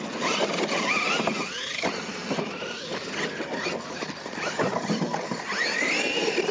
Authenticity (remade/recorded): recorded